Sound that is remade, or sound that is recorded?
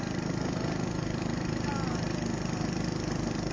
recorded